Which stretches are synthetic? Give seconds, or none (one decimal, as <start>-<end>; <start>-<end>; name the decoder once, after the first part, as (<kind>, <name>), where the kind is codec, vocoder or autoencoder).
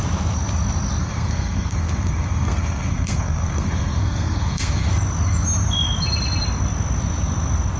1.0-4.9 (codec, SNAC)